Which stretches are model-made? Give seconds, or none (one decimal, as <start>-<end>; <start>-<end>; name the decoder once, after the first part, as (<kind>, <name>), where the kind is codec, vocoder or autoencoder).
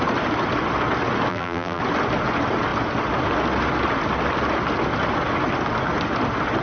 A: 1.3-1.8 (vocoder, BigVGAN v2)